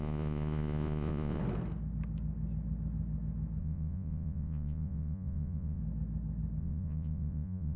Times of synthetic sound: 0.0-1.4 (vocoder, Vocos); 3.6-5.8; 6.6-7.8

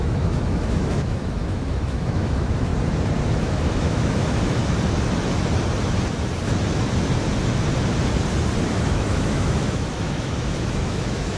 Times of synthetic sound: 0.0-2.7 (autoencoder, DAC-VAE); 3.3-4.6; 8.7-11.4

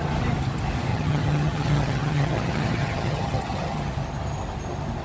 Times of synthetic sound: 0.9-3.9 (vocoder, HiFi-GAN)

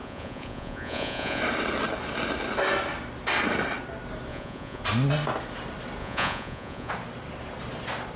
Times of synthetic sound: 0.0-1.4 (vocoder, Vocos); 4.3-4.8; 6.0-6.9